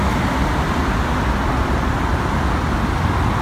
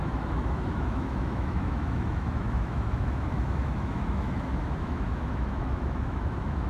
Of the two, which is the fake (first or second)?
second